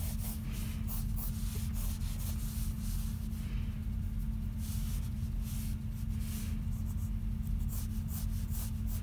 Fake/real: real